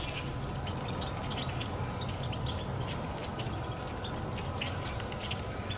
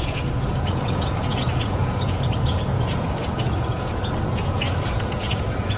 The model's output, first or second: second